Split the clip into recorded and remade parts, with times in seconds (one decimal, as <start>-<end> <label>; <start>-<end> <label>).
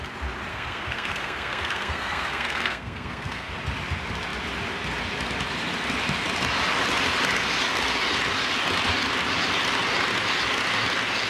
0.0-0.5 recorded; 0.5-3.5 remade; 3.5-11.3 recorded